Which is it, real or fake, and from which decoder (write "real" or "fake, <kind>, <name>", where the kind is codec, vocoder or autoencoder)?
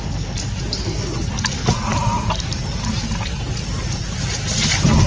real